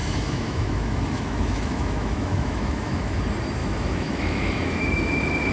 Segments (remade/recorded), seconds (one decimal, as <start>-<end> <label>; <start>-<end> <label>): 0.0-3.2 remade; 3.2-3.6 recorded; 3.6-5.5 remade